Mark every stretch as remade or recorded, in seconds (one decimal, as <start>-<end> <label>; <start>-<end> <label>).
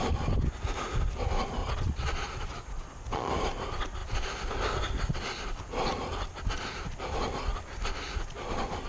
0.0-1.6 recorded; 1.6-3.3 remade; 3.3-8.9 recorded